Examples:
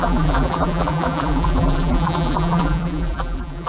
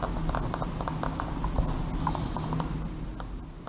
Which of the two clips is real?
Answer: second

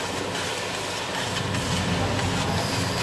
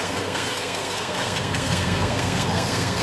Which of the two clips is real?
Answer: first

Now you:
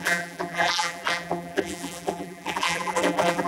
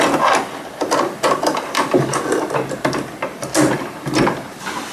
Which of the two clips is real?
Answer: second